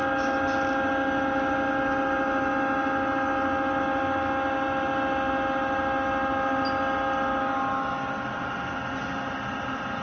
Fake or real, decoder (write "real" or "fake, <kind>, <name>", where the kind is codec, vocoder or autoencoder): real